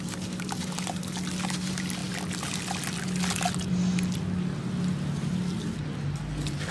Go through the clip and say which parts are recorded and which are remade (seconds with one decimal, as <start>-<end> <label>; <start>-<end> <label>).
0.0-6.7 recorded